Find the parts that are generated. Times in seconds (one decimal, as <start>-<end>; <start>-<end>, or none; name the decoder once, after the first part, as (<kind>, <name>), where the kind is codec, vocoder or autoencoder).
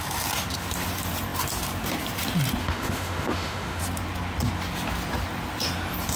2.6-3.8 (autoencoder, DAC-VAE)